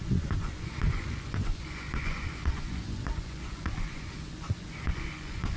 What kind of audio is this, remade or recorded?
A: remade